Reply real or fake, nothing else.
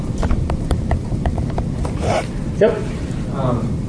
fake